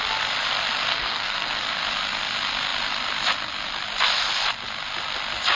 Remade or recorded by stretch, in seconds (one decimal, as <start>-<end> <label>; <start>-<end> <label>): 0.0-0.9 recorded; 0.9-1.5 remade; 1.5-5.6 recorded